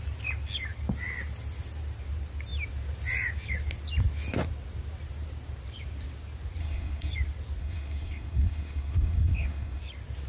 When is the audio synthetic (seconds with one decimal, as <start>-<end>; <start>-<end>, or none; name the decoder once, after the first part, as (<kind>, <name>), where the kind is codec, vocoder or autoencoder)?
6.6-7.1 (codec, SNAC); 7.6-9.8